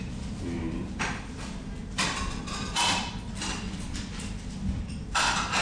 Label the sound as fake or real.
fake